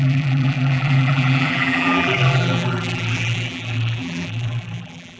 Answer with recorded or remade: remade